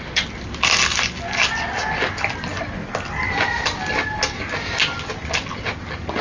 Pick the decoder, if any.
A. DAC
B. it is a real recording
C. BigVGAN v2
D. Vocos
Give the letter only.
B